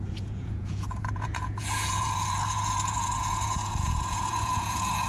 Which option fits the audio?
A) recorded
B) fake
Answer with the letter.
B